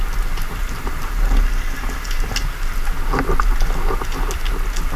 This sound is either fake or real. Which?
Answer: real